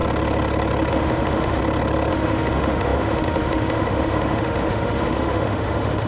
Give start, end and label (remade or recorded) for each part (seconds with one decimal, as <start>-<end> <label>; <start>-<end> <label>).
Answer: 0.0-0.9 recorded; 0.9-1.6 remade; 1.6-2.1 recorded; 2.1-6.1 remade